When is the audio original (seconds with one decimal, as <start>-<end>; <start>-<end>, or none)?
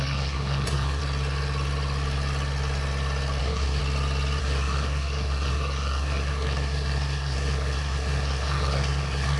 1.0-3.4; 3.8-4.4